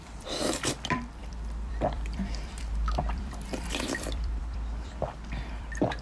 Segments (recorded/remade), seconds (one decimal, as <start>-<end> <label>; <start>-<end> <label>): 0.0-6.0 remade